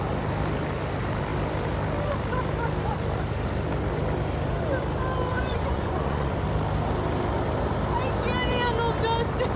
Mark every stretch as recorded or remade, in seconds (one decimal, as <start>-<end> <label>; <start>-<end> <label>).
0.0-5.3 recorded; 5.3-6.4 remade; 6.4-9.6 recorded